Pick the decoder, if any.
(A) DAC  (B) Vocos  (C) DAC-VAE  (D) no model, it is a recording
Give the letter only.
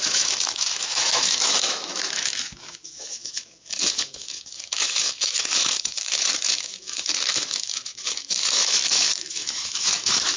C